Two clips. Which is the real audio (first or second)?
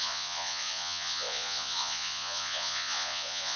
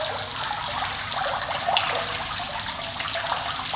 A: second